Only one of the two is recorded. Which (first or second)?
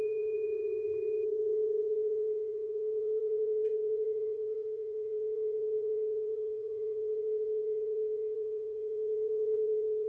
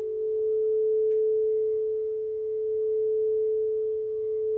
second